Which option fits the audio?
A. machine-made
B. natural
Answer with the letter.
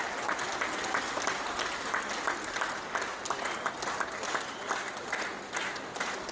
B